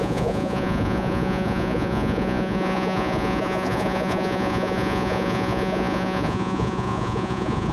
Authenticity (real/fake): fake